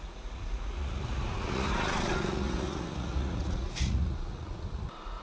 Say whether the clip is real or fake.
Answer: fake